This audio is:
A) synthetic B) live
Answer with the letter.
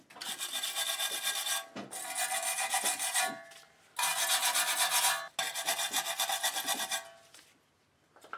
B